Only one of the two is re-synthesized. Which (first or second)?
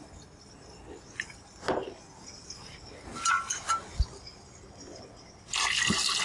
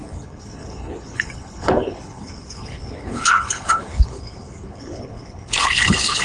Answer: second